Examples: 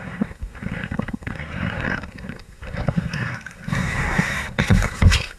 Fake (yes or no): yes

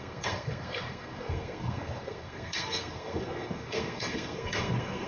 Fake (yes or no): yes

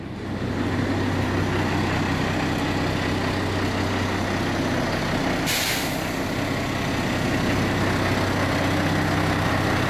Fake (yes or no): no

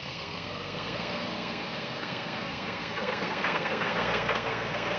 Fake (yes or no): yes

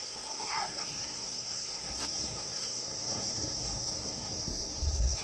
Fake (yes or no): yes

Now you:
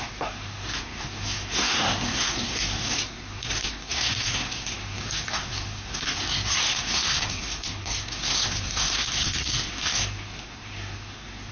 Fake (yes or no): yes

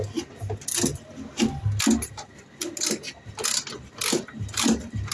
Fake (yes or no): no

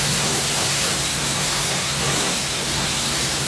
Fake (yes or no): yes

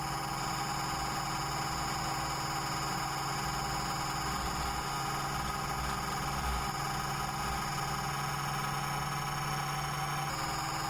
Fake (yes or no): no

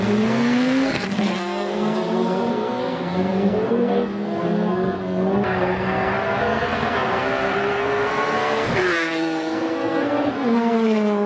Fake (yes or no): yes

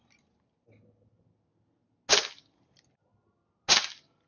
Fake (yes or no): no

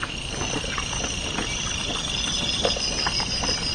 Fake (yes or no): no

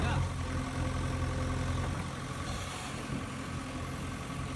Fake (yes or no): no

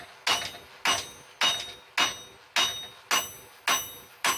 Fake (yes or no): no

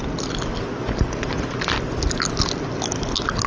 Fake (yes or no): no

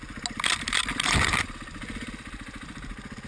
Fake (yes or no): no